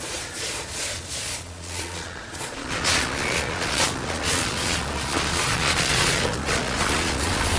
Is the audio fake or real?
fake